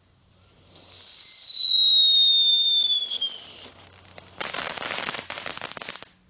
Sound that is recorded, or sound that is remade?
recorded